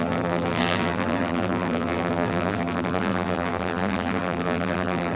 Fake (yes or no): yes